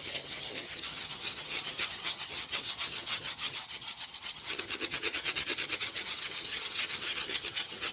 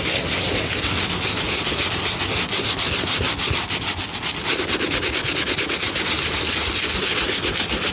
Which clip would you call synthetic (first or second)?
first